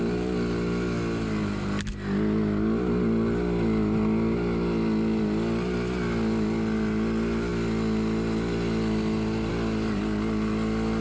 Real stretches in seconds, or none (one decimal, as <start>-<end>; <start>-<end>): 0.0-11.0